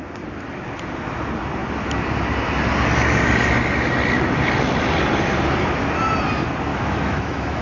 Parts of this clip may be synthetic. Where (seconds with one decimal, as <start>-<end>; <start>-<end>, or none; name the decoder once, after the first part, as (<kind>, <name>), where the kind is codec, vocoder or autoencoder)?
6.7-7.6 (autoencoder, DAC-VAE)